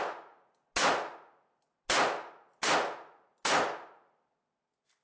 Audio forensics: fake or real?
real